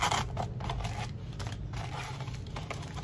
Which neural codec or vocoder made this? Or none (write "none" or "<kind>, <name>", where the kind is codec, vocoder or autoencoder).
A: none